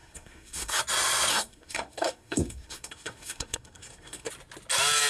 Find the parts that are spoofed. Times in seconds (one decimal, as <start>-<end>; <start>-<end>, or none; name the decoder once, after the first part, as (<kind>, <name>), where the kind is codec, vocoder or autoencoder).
0.0-0.8 (codec, SNAC); 1.3-4.3